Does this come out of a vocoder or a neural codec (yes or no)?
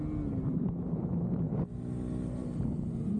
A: no